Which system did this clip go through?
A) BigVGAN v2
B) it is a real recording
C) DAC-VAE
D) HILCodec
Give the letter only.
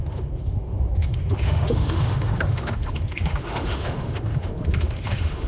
C